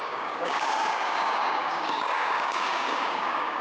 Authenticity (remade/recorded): remade